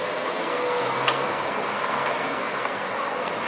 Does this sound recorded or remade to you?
remade